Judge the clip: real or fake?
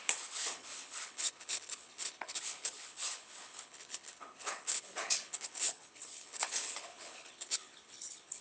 fake